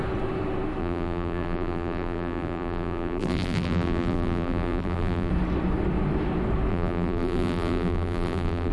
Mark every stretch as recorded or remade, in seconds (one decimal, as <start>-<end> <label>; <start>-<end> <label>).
0.0-0.8 recorded; 0.8-5.3 remade; 5.3-6.7 recorded; 6.7-8.7 remade